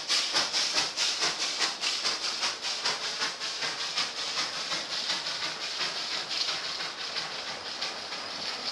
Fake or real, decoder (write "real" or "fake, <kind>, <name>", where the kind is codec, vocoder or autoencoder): real